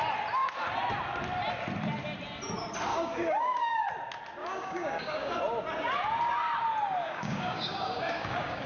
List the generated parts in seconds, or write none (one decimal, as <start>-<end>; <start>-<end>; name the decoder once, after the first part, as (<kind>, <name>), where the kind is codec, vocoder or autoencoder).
2.9-3.9 (codec, DAC); 4.4-5.4; 7.0-8.7